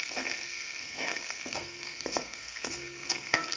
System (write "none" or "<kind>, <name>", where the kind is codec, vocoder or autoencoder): codec, SNAC